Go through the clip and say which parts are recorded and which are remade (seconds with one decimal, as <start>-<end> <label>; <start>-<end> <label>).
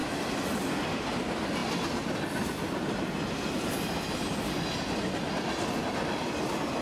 0.0-6.8 recorded